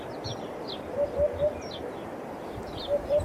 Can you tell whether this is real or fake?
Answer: fake